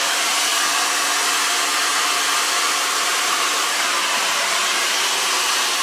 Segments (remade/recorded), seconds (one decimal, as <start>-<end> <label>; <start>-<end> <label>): 0.0-3.1 recorded; 3.1-4.6 remade; 4.6-5.8 recorded

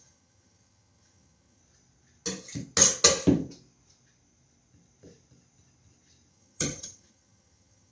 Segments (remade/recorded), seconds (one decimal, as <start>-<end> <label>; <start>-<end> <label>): 0.0-1.6 remade; 1.6-6.3 recorded; 6.3-7.9 remade

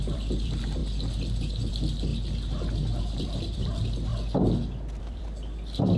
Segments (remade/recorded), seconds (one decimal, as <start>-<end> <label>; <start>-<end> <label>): 0.0-0.8 remade; 0.8-1.7 recorded; 1.7-2.1 remade; 2.1-3.0 recorded; 3.0-4.1 remade; 4.1-5.0 recorded; 5.0-6.0 remade

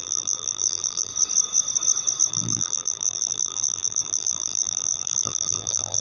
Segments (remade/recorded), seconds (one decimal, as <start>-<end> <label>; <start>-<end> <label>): 0.0-1.1 remade; 1.1-2.3 recorded; 2.3-6.0 remade

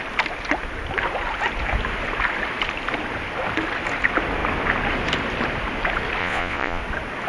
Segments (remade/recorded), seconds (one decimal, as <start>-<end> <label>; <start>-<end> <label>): 0.0-6.2 recorded; 6.2-6.8 remade; 6.8-7.3 recorded

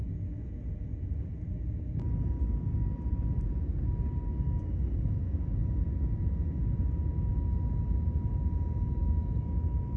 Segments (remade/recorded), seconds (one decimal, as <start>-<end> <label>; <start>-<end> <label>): 0.0-9.0 recorded; 9.0-10.0 remade

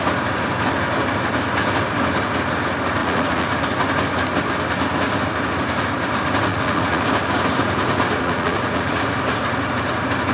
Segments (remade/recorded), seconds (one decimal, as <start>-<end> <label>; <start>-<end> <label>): 0.0-3.0 recorded; 3.0-3.6 remade; 3.6-6.5 recorded; 6.5-7.0 remade; 7.0-8.2 recorded; 8.2-8.9 remade; 8.9-10.3 recorded

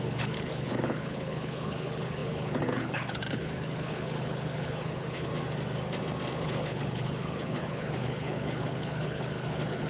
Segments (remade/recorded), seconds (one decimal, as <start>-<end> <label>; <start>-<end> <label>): 0.0-5.3 remade; 5.3-6.4 recorded; 6.4-9.9 remade